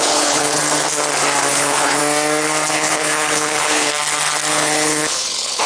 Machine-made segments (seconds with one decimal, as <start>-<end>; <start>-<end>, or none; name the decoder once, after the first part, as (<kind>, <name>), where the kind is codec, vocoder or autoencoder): 0.0-0.6 (codec, HILCodec); 1.5-2.0; 2.7-3.9; 4.5-5.7